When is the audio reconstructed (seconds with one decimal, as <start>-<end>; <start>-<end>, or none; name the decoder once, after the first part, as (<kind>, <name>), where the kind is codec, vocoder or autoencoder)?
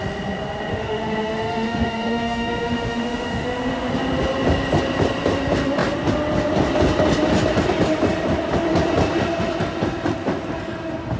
0.7-3.9 (autoencoder, DAC-VAE)